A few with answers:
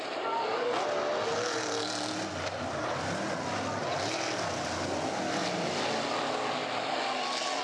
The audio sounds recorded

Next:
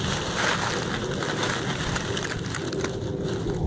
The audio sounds recorded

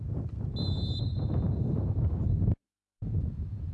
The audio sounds recorded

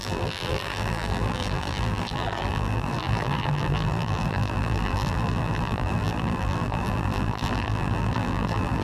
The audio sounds remade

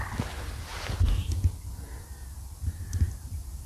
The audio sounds recorded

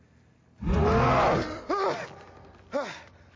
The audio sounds recorded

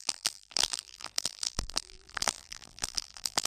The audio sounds remade